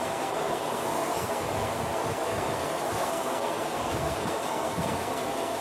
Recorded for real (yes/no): no